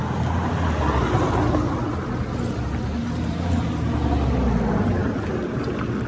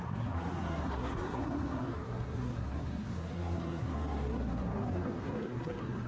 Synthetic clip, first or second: second